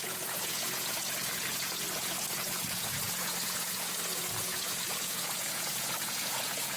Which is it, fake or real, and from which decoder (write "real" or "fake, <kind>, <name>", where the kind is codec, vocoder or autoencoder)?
fake, vocoder, Vocos